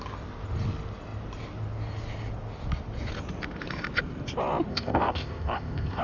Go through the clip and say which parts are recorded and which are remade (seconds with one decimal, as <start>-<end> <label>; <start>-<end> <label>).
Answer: 0.0-4.7 recorded; 4.7-6.0 remade